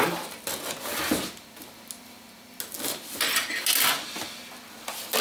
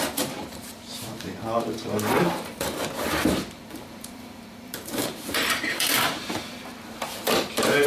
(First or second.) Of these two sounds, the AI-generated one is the second